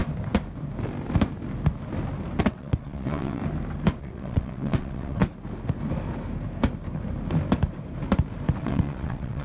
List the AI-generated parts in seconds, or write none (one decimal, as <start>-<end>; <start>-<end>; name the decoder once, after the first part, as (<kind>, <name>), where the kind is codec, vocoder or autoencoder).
2.4-3.4 (vocoder, WaveNeXt); 4.0-5.2; 8.6-9.4